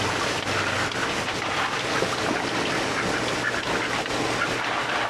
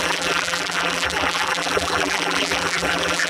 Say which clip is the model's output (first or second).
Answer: second